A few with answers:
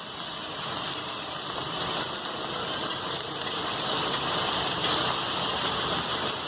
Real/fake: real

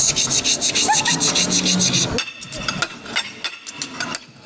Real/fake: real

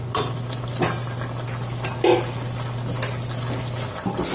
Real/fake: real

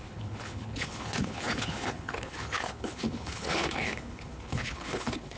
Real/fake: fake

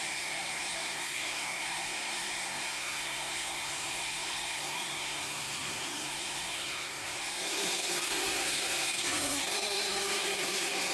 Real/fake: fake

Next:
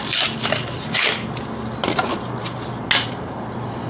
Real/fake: real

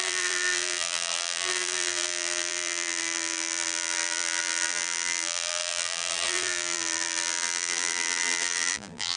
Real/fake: fake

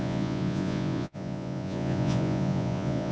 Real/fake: fake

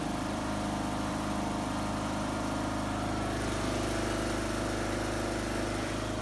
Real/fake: fake